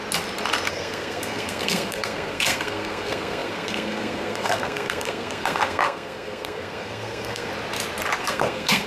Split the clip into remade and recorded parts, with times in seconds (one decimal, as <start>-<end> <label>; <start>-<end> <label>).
0.0-0.7 recorded; 0.7-7.5 remade; 7.5-8.2 recorded; 8.2-8.9 remade